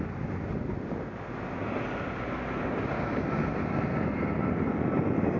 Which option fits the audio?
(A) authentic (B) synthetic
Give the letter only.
A